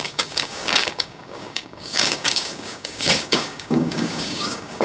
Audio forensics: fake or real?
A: fake